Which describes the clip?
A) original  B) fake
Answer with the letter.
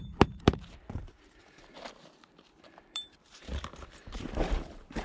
B